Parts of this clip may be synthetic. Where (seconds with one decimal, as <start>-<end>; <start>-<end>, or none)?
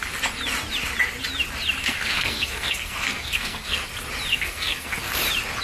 1.8-3.8; 4.3-5.1